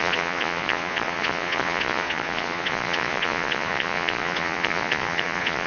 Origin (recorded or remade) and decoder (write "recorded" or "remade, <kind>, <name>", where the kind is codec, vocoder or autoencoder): remade, vocoder, Vocos